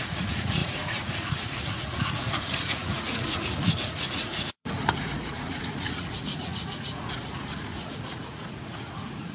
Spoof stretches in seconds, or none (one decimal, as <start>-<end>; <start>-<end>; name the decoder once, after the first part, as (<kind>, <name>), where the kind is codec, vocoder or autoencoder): 0.0-9.3 (vocoder, Vocos)